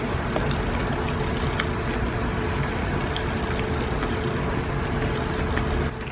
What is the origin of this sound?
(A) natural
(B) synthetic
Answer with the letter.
A